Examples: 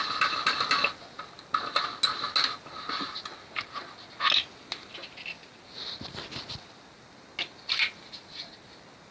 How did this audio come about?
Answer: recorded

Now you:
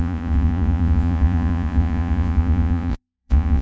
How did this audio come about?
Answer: remade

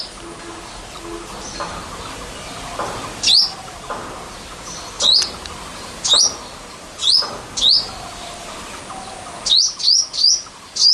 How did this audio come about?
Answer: recorded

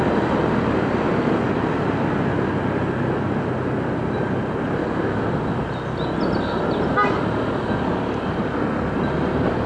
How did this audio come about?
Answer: recorded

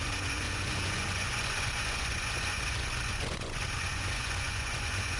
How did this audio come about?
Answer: remade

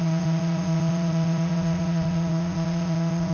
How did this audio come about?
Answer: remade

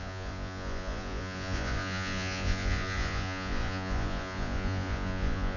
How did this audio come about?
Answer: remade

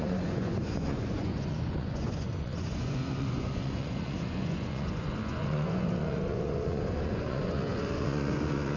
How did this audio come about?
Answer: remade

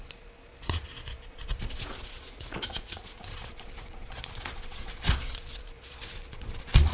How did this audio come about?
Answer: remade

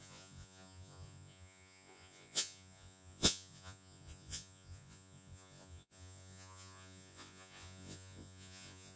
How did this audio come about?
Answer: remade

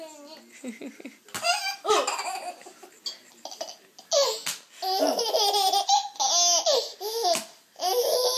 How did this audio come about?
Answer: recorded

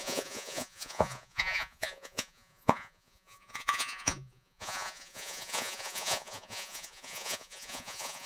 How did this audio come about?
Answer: remade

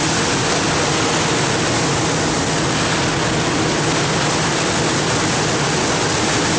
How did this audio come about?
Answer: recorded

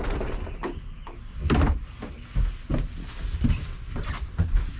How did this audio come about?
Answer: recorded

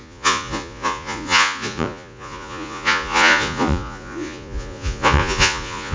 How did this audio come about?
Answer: remade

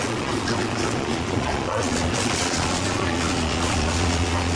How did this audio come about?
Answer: remade